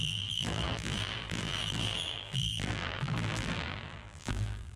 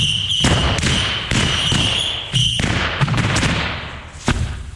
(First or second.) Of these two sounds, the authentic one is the second